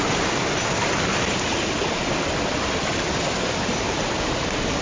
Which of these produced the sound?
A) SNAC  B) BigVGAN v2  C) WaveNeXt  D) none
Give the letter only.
D